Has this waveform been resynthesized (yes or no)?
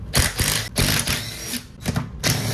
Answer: no